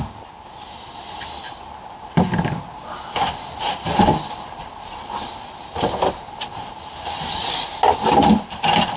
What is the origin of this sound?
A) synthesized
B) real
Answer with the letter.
B